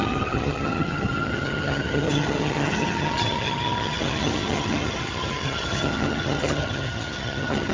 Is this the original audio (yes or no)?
no